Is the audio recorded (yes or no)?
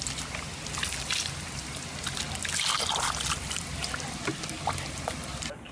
yes